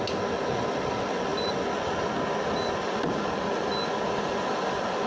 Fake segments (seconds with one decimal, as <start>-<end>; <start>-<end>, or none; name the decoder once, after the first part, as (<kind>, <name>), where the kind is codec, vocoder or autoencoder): none